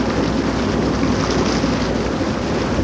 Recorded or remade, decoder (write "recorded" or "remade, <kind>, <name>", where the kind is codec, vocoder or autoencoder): recorded